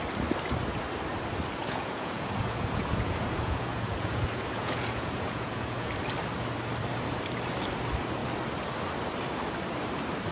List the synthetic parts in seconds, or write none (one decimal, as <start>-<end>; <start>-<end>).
1.6-5.9